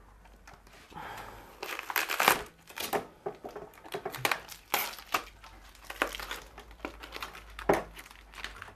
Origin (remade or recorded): recorded